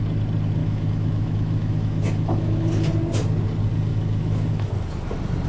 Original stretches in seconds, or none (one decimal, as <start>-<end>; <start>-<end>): 0.0-0.6; 2.7-3.9; 4.7-5.5